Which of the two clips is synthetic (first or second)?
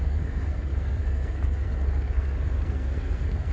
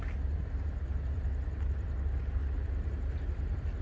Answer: first